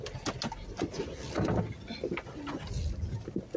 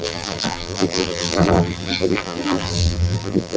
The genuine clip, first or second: first